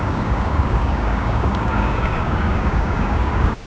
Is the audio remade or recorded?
remade